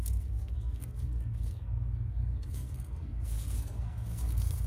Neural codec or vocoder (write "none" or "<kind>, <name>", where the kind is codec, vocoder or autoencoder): codec, SNAC